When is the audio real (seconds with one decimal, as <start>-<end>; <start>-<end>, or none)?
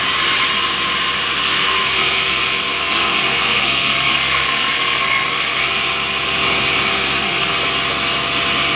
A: 0.0-1.4; 5.7-6.9; 7.5-8.8